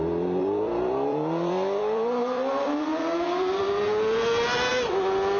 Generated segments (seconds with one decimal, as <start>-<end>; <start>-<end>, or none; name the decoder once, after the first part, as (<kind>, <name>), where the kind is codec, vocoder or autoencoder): 0.4-3.6 (vocoder, BigVGAN v2)